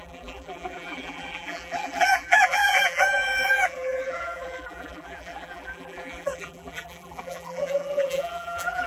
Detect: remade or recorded remade